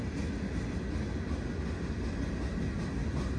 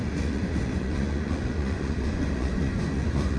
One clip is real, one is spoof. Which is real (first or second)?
first